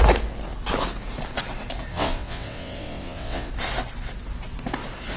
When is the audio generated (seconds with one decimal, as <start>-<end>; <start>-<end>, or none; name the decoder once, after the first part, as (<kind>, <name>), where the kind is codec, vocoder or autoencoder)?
1.9-3.5 (vocoder, WaveNeXt)